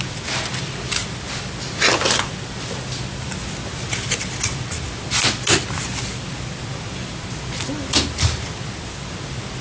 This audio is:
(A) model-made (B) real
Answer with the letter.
B